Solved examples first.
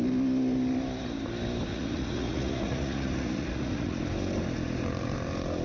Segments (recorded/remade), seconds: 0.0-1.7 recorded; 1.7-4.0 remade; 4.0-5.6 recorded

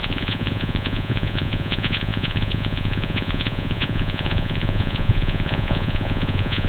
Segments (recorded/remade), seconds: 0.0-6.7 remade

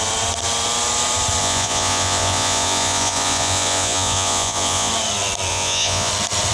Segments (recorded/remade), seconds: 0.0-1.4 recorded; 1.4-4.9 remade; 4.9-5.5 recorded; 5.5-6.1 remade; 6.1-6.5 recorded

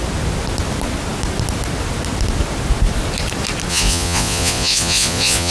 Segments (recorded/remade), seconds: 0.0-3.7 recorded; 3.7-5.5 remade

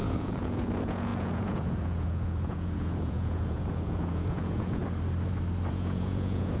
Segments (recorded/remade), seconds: 0.0-4.8 remade; 4.8-5.7 recorded; 5.7-6.6 remade

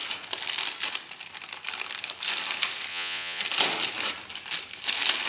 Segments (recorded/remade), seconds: 0.0-2.9 recorded; 2.9-3.4 remade; 3.4-5.3 recorded

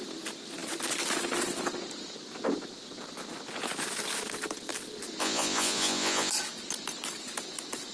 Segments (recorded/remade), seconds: 0.0-5.2 recorded; 5.2-6.3 remade; 6.3-7.9 recorded

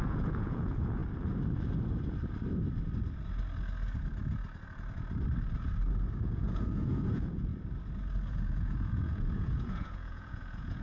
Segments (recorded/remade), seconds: 0.0-1.0 remade; 1.0-6.2 recorded; 6.2-7.5 remade; 7.5-8.3 recorded; 8.3-10.8 remade